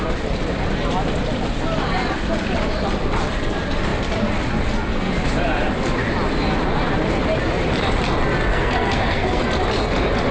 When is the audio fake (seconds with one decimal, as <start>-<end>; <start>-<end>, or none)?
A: 8.5-9.4